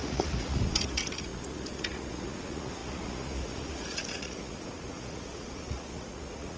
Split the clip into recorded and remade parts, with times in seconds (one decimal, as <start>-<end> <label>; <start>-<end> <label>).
0.0-6.6 remade